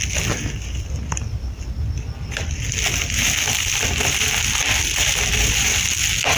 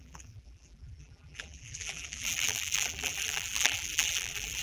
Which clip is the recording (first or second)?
first